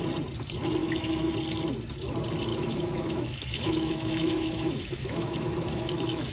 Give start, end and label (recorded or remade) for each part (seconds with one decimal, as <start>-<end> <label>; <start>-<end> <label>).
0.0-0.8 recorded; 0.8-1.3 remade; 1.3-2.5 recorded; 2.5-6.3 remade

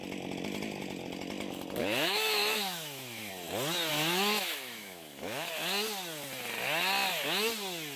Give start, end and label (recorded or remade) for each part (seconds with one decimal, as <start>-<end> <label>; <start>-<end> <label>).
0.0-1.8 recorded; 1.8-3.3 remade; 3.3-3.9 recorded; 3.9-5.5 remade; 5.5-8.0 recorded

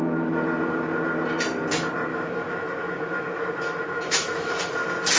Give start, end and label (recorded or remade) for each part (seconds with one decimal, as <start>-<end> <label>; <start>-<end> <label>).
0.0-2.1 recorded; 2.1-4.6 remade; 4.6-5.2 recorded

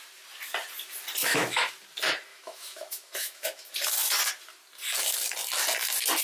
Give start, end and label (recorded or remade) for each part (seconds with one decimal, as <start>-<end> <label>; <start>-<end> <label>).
0.0-1.2 recorded; 1.2-1.7 remade; 1.7-2.3 recorded; 2.3-3.7 remade; 3.7-6.2 recorded

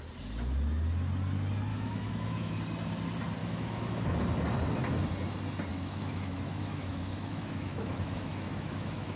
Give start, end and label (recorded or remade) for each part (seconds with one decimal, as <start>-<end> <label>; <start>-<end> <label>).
0.0-1.7 recorded; 1.7-2.6 remade; 2.6-3.4 recorded; 3.4-4.2 remade; 4.2-5.7 recorded; 5.7-9.2 remade